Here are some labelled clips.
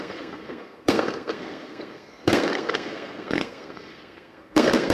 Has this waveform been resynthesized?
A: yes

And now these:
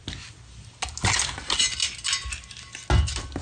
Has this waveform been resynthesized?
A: no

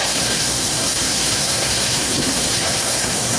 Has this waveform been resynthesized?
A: yes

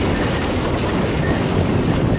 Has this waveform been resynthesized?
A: no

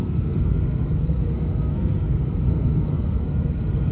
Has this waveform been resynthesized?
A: yes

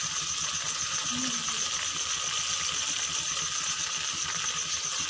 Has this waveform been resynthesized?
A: no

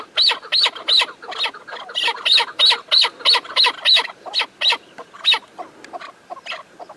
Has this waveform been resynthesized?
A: no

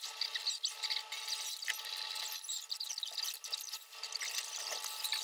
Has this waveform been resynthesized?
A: no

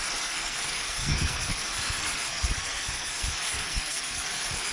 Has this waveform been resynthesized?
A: yes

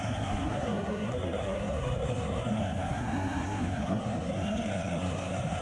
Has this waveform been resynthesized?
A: yes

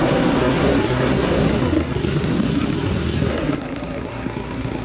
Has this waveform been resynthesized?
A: yes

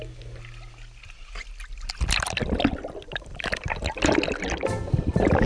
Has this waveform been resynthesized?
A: no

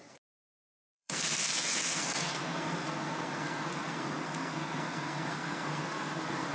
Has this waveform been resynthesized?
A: yes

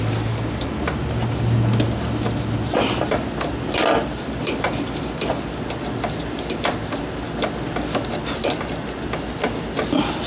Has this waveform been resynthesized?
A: no